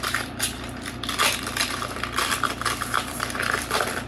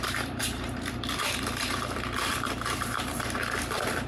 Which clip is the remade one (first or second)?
second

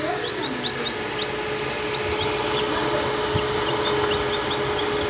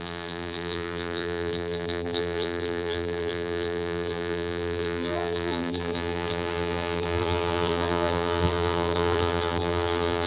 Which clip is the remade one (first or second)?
second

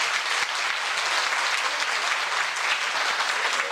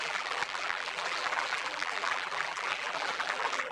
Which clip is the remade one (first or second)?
second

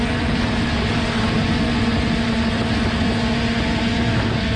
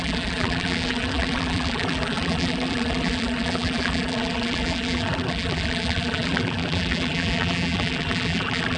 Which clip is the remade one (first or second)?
second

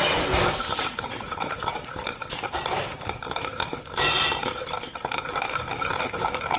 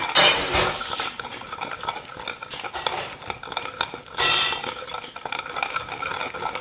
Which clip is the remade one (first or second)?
first